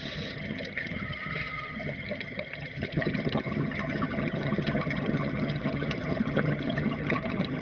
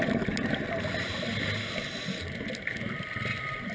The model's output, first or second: first